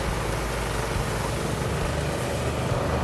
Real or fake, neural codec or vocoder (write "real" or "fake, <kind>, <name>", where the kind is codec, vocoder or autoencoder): real